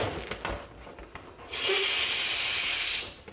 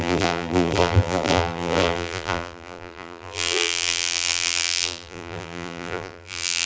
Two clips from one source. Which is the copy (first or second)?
second